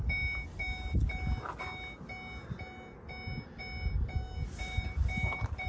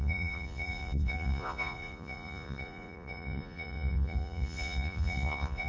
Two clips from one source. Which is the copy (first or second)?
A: second